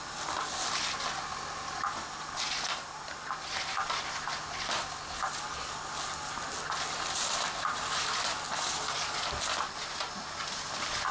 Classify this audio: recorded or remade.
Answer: recorded